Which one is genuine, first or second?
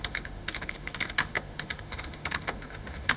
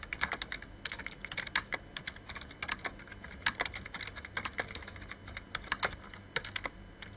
second